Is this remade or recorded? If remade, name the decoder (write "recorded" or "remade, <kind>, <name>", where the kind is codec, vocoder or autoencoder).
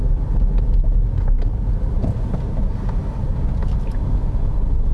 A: recorded